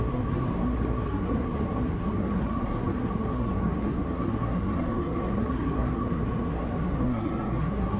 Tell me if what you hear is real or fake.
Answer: fake